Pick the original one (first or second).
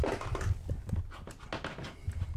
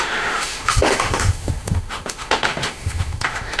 first